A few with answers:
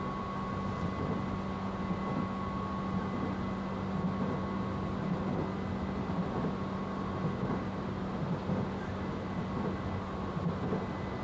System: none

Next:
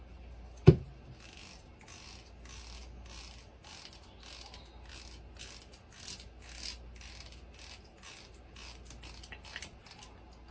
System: none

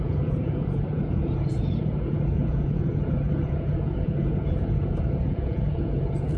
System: vocoder, Vocos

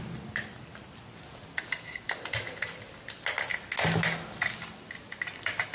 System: none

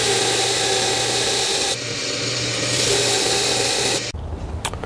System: none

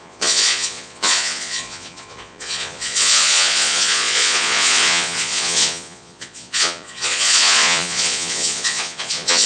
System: vocoder, Vocos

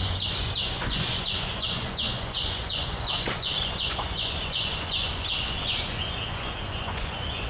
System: vocoder, Vocos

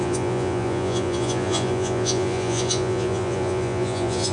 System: vocoder, Vocos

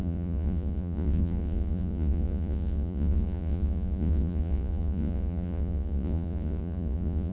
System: vocoder, Vocos